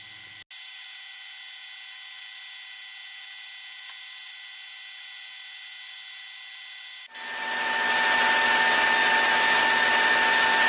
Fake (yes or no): no